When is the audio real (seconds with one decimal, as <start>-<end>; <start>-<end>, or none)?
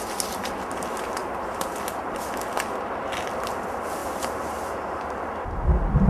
0.0-4.0; 5.3-6.1